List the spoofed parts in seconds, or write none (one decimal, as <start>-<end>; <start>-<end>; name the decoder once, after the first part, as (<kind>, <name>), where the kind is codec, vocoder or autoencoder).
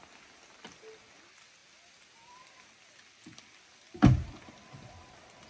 none